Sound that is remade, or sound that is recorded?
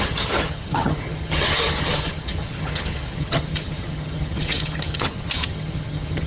remade